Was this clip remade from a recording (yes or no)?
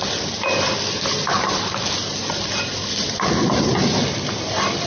no